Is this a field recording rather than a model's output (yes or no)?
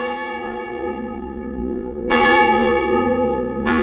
no